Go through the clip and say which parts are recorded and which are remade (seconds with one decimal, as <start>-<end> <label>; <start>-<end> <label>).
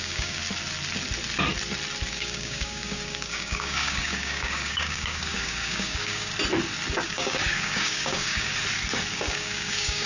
0.0-0.4 remade; 0.4-2.1 recorded; 2.1-6.3 remade; 6.3-7.0 recorded; 7.0-8.5 remade; 8.5-9.1 recorded; 9.1-10.1 remade